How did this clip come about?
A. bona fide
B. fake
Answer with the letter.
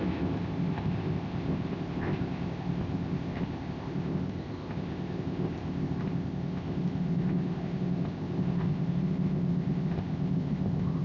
B